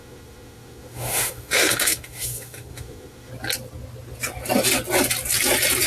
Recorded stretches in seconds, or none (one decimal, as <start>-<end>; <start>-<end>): 3.3-5.9